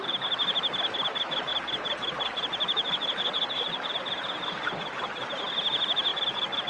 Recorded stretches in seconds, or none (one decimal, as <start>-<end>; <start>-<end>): 0.0-6.7